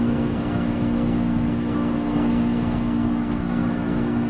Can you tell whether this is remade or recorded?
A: remade